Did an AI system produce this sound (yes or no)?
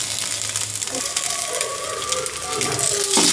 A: no